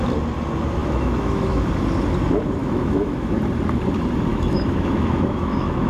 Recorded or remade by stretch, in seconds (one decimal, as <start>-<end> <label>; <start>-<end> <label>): 0.0-0.8 recorded; 0.8-1.7 remade; 1.7-2.6 recorded; 2.6-3.4 remade; 3.4-4.3 recorded; 4.3-5.9 remade